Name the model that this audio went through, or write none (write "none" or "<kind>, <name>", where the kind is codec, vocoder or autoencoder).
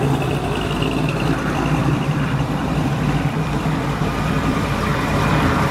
vocoder, BigVGAN v2